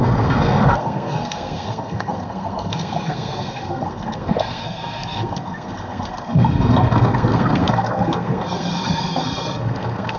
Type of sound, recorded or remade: remade